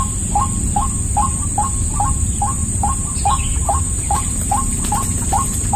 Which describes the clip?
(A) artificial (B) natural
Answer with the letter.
B